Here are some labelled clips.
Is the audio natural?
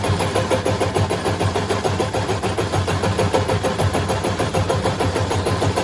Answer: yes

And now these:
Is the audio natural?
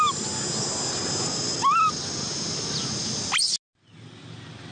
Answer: yes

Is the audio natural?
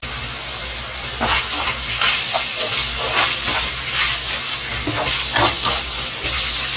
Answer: yes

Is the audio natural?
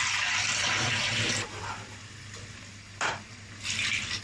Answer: no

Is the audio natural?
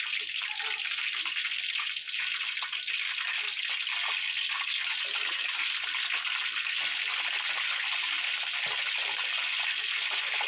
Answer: yes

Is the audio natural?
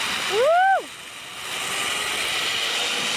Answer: yes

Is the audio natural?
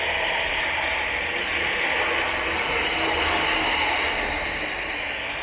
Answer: yes